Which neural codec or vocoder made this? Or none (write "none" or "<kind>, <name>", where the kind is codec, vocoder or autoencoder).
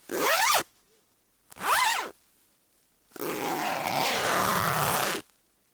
vocoder, BigVGAN v2